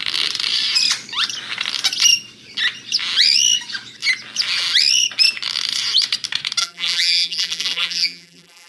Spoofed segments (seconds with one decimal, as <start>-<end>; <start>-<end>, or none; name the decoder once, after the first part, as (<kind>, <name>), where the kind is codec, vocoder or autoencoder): 6.6-8.7 (vocoder, BigVGAN v2)